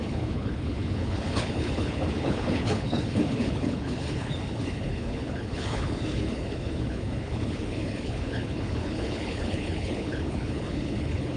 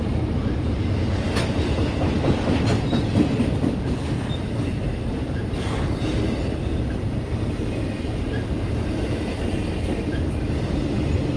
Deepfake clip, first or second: first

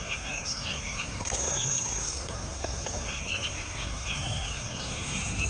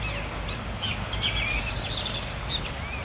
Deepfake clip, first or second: first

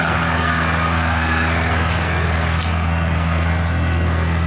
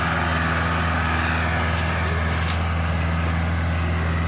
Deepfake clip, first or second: first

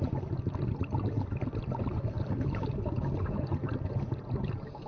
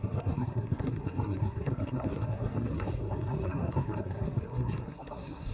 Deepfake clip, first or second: second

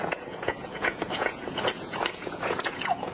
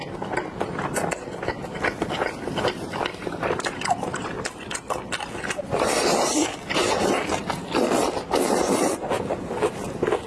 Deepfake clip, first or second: first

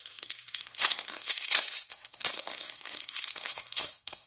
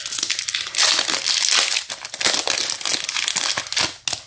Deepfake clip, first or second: first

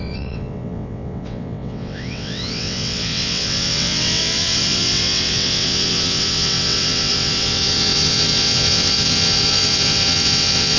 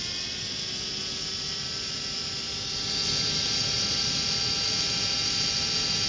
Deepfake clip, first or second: first